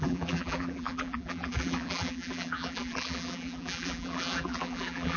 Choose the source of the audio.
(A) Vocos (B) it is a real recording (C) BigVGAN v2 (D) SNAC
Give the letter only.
C